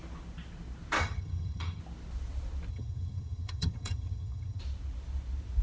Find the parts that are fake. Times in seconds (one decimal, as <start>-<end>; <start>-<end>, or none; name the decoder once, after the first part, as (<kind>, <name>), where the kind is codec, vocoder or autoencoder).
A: 1.0-1.8 (vocoder, HiFi-GAN); 2.7-4.6

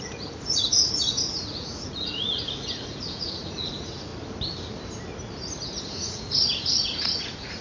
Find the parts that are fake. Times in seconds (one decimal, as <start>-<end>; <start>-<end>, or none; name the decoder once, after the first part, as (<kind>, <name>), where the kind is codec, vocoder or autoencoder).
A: 0.0-4.1 (vocoder, Vocos); 5.8-7.6

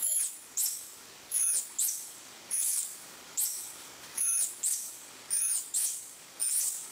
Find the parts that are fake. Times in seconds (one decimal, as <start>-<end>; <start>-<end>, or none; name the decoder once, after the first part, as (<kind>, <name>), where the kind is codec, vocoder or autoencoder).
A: 0.0-6.9 (codec, DAC)

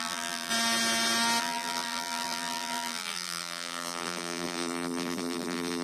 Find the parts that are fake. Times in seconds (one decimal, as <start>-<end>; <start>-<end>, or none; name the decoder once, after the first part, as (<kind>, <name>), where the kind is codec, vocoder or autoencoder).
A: 0.0-0.5 (vocoder, BigVGAN v2); 1.4-5.8

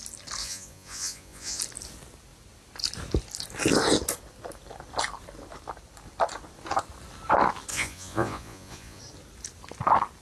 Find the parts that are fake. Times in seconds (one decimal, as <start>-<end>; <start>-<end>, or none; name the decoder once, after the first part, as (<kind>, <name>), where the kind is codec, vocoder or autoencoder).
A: 0.4-1.6 (vocoder, Vocos); 7.7-9.0

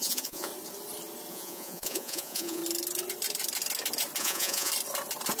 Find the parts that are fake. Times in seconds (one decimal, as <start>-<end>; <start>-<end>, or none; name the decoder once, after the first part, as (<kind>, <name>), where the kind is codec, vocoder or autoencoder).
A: 0.0-0.5 (vocoder, Vocos); 1.3-2.6; 4.2-4.7

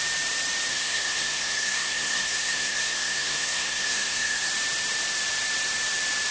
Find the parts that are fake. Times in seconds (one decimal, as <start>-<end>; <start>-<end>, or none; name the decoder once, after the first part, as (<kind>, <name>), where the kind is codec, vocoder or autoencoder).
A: 0.7-4.5 (codec, SNAC)